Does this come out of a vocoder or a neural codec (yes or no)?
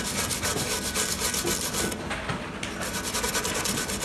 no